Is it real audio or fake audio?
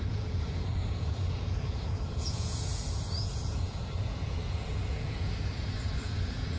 fake